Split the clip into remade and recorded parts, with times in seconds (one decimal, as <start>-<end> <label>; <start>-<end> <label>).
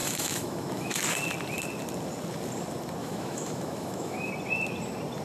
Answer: 0.0-1.0 remade; 1.0-3.0 recorded; 3.0-4.3 remade; 4.3-5.2 recorded